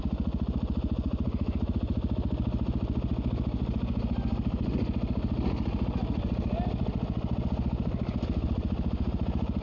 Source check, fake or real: real